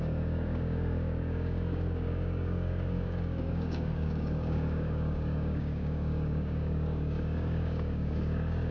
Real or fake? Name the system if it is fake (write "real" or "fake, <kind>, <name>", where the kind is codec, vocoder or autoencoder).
fake, codec, DAC